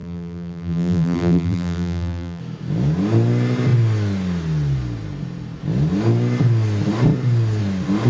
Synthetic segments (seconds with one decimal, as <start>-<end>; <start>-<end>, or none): 0.0-2.4